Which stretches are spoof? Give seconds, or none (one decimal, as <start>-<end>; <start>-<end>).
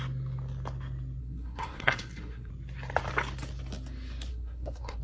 1.2-2.5; 4.3-5.0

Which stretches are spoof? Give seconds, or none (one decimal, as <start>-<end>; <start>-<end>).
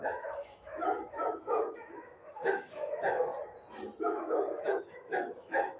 0.0-3.3; 4.0-5.8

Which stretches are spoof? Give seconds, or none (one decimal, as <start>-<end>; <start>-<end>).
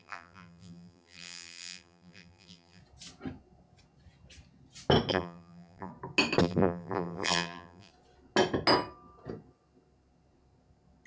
0.0-2.8; 5.1-5.9; 6.4-7.9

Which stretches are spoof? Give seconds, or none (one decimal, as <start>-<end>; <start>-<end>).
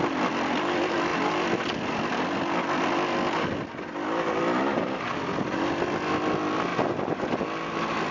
none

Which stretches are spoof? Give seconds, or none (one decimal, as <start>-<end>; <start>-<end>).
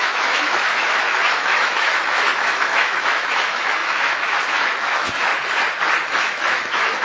0.0-5.3; 6.2-7.0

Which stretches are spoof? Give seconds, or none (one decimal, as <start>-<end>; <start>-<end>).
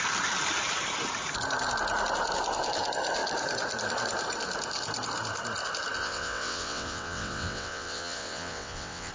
6.0-9.1